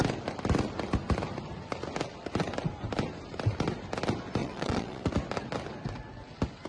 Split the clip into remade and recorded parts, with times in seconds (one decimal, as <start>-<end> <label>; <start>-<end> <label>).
0.0-4.4 recorded; 4.4-5.1 remade; 5.1-6.7 recorded